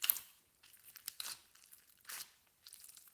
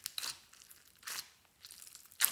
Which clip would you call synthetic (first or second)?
first